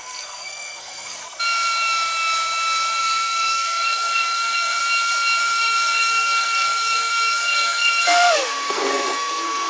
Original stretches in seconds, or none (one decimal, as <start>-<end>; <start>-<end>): 1.2-3.0; 4.8-5.4